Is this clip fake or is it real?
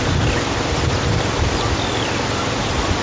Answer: real